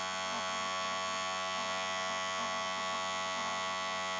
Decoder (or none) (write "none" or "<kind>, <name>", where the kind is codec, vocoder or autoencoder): vocoder, Vocos